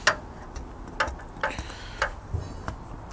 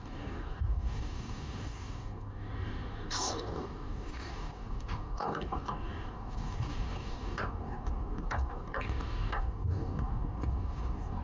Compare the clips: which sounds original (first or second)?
first